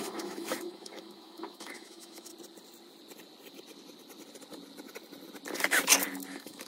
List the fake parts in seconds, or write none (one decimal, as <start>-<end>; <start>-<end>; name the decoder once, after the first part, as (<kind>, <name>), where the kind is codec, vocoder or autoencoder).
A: 0.0-2.3 (autoencoder, DAC-VAE); 6.3-6.7